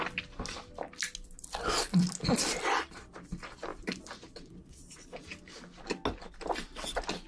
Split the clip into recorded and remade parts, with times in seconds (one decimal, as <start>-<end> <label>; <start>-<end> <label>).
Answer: 0.0-3.7 recorded; 3.7-5.6 remade; 5.6-7.3 recorded